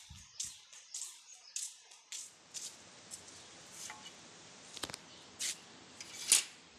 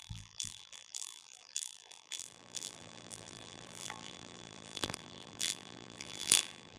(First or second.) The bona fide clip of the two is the first